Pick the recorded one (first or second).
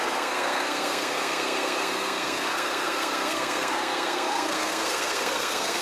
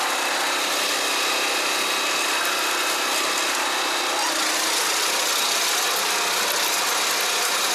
second